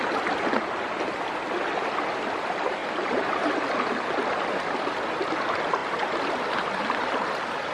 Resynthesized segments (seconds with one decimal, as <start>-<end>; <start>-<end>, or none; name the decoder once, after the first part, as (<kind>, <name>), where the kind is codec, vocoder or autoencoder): 2.8-3.5 (vocoder, BigVGAN v2)